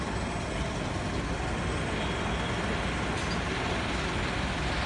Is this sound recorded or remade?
recorded